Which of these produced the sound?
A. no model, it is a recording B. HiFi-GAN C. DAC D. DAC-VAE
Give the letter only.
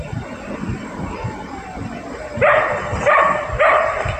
A